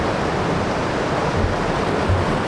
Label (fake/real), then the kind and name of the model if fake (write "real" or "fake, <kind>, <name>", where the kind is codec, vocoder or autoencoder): real